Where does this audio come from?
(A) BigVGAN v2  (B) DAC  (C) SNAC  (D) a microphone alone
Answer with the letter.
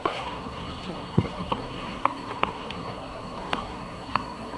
C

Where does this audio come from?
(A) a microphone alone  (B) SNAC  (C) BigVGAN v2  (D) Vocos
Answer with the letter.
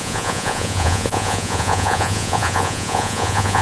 D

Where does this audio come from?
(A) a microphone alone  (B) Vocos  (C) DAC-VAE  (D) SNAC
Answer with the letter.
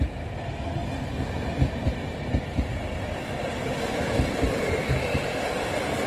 A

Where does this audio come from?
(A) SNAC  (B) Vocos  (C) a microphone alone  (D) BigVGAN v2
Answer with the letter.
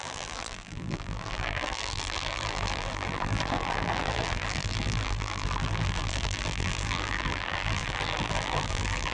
D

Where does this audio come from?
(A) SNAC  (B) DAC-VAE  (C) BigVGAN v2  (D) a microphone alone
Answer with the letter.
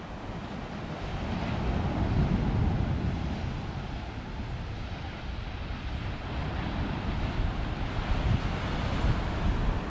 D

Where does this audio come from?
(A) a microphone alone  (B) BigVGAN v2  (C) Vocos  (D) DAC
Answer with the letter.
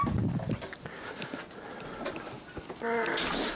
A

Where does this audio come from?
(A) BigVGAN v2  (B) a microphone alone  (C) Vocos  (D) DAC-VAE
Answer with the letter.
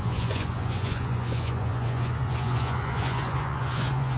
C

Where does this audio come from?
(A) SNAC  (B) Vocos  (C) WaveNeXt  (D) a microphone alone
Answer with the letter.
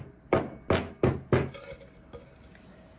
D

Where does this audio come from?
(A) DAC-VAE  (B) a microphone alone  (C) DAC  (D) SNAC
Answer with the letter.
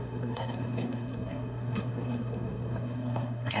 D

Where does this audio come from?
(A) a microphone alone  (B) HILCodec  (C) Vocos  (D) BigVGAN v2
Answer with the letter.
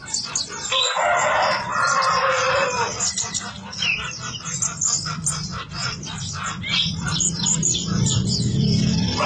D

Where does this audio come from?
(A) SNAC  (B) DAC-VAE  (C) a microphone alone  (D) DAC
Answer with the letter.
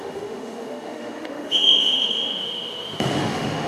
B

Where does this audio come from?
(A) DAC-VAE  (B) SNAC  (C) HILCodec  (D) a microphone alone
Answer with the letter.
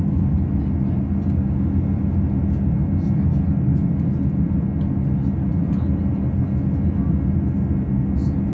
D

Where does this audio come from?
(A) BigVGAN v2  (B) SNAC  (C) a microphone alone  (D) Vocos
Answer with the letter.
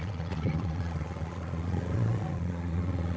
D